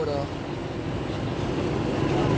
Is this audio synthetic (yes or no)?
no